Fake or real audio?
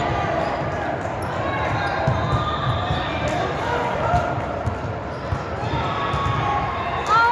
real